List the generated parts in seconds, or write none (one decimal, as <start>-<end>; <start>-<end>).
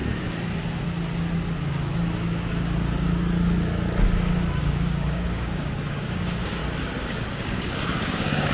4.6-6.6; 7.3-8.5